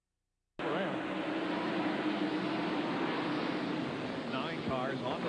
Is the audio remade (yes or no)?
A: no